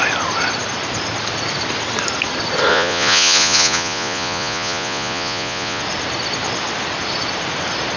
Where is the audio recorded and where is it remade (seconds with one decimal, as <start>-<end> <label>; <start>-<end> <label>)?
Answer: 0.0-2.7 recorded; 2.7-5.8 remade; 5.8-8.0 recorded